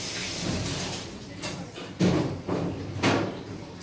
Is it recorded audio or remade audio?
remade